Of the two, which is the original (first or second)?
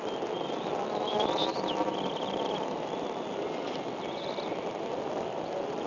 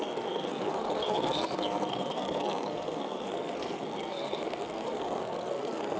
first